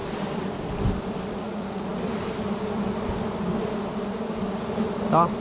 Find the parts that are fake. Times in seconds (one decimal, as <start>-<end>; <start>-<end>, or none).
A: 1.3-1.9